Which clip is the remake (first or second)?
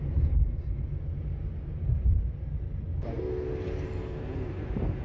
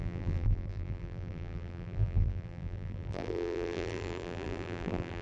second